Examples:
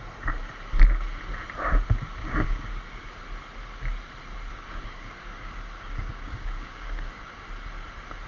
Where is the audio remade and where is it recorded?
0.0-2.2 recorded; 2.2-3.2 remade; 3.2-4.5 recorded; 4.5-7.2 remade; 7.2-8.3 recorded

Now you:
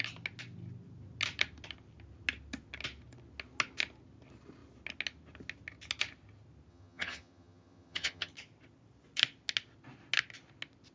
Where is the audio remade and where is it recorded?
0.0-6.7 recorded; 6.7-8.3 remade; 8.3-10.9 recorded

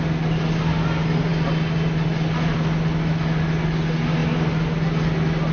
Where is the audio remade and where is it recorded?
0.0-5.5 recorded

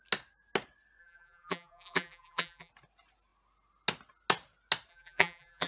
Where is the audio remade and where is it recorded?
0.0-1.0 recorded; 1.0-2.7 remade; 2.7-4.9 recorded; 4.9-5.7 remade